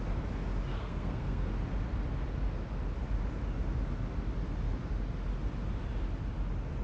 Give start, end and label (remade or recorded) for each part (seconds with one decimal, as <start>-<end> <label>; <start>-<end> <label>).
0.0-0.7 recorded; 0.7-1.5 remade; 1.5-6.8 recorded